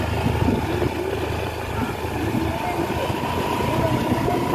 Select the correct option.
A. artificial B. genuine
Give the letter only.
B